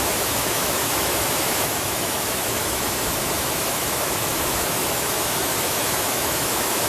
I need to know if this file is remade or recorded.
remade